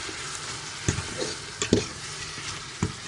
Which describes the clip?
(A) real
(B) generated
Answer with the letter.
A